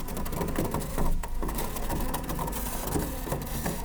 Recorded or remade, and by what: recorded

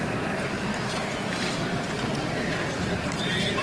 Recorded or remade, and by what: remade, vocoder, BigVGAN v2